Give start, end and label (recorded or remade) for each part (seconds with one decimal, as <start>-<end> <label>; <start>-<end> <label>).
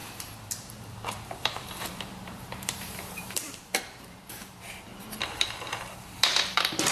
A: 0.0-4.9 remade; 4.9-5.9 recorded; 5.9-6.9 remade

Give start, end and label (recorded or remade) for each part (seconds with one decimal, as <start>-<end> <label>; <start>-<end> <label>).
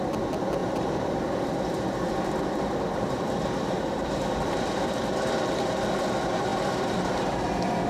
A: 0.0-7.9 remade